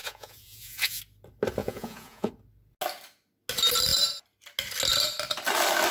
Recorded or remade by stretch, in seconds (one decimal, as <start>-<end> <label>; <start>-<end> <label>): 0.0-1.0 remade; 1.0-1.6 recorded; 1.6-2.3 remade; 2.3-5.9 recorded